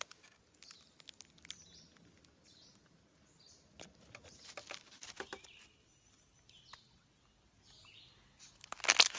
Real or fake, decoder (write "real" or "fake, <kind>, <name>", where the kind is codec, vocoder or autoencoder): real